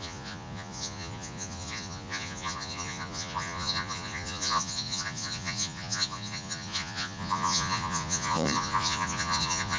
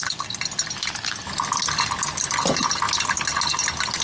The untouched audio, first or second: second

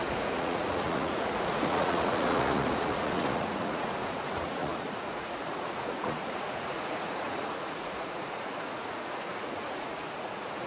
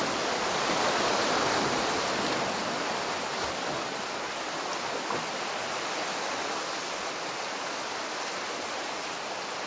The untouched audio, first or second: second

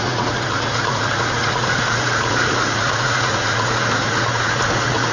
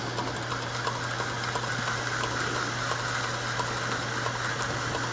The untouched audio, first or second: second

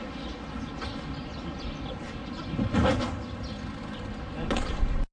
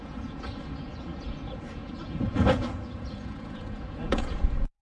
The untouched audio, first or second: first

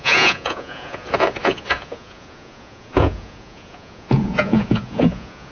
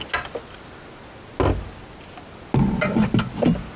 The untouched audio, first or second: second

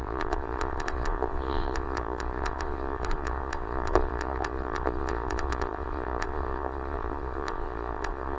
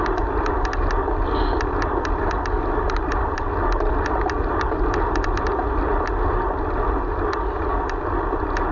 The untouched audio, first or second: second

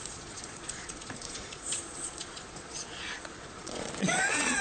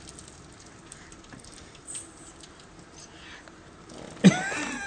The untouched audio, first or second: second